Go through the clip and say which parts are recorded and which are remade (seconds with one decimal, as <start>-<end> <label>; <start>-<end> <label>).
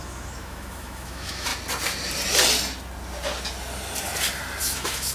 0.0-1.5 remade; 1.5-4.6 recorded; 4.6-5.1 remade